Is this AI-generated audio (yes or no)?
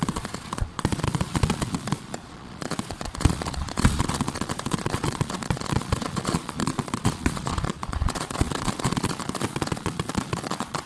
yes